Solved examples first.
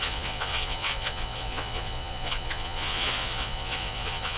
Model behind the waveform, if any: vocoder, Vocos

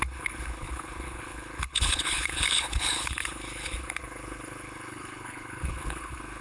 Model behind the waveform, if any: codec, HILCodec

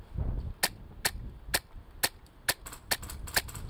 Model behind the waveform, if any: none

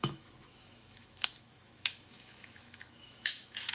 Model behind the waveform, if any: autoencoder, DAC-VAE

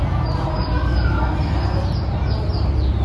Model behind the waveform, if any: none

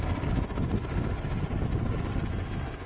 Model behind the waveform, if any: none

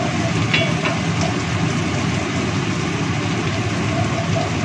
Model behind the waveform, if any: none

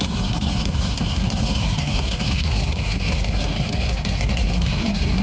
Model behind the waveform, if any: codec, SNAC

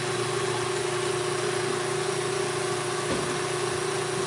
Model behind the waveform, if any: none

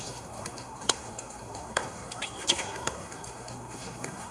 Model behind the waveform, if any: codec, SNAC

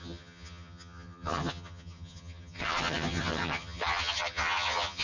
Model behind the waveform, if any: vocoder, HiFi-GAN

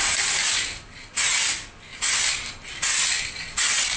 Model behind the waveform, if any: none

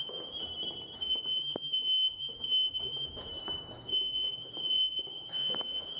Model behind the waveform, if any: autoencoder, DAC-VAE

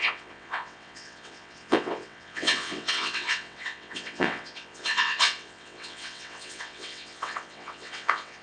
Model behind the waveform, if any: vocoder, WaveNeXt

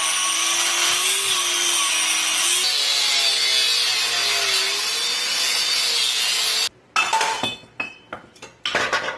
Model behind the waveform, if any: none